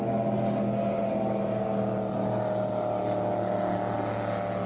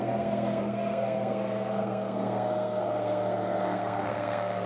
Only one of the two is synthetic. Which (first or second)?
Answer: second